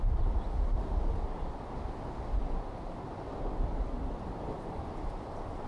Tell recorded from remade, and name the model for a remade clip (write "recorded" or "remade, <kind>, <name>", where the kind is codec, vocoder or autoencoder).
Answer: recorded